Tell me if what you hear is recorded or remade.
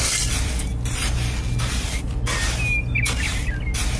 recorded